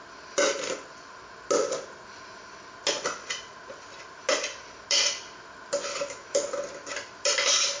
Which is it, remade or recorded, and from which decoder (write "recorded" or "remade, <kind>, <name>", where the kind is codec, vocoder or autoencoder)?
recorded